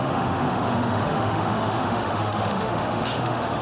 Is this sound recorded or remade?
remade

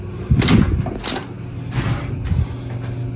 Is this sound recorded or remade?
recorded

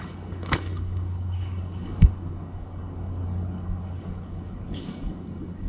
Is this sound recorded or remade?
remade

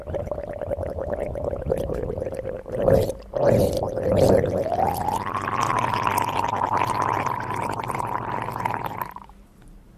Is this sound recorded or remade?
recorded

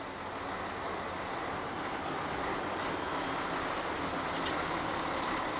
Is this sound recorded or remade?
recorded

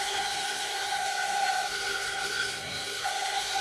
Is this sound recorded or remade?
remade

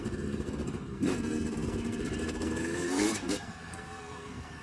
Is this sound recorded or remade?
remade